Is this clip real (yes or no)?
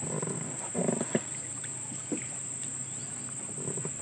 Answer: no